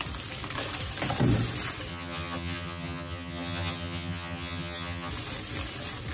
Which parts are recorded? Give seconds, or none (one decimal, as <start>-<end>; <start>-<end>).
0.0-1.9; 5.1-6.1